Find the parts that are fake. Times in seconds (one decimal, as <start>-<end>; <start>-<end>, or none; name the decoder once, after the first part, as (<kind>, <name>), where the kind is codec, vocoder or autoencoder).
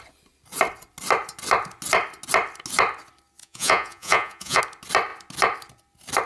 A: 3.4-4.6 (vocoder, Vocos)